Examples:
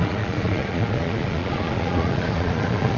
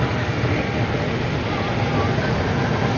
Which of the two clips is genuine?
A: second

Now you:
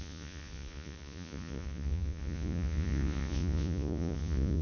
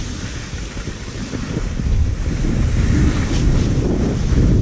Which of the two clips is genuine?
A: second